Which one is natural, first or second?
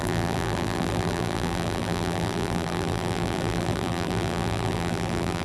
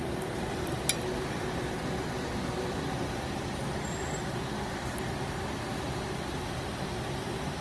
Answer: second